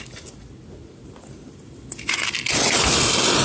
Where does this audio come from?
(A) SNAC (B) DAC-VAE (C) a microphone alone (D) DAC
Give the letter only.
C